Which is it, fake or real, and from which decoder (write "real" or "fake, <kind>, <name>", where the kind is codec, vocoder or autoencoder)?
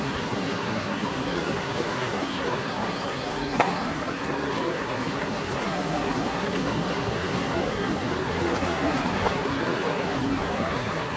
fake, codec, SNAC